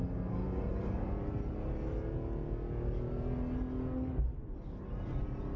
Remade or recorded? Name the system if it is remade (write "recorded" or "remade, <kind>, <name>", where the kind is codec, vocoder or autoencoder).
recorded